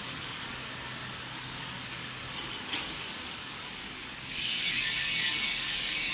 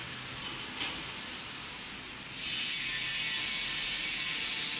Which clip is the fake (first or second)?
first